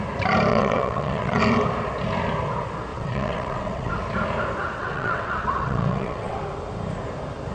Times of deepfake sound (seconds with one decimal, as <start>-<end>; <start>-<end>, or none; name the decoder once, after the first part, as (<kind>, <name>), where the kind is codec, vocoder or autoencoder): 0.5-1.4 (vocoder, WaveNeXt); 2.9-3.9; 4.8-6.4